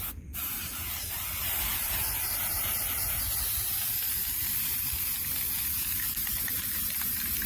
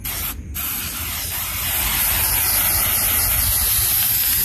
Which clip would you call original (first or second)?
second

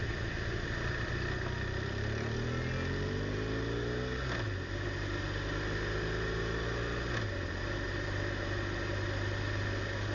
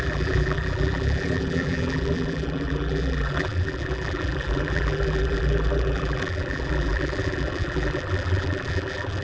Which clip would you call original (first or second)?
first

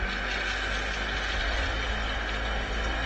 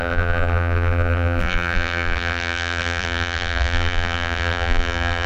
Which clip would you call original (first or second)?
first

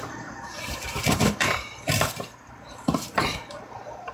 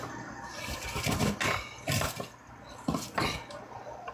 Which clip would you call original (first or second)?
second